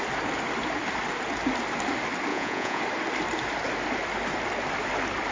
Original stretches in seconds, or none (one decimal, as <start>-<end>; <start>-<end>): 0.0-2.3; 2.8-5.3